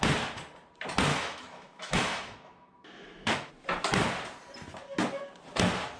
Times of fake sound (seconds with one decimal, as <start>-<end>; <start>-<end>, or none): 1.1-3.5